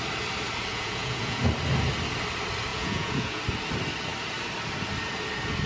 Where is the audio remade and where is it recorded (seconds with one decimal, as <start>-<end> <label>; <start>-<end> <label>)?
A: 0.0-0.7 recorded; 0.7-1.4 remade; 1.4-2.7 recorded; 2.7-3.4 remade; 3.4-5.7 recorded